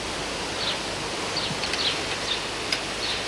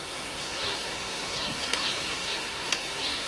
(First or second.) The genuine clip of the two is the first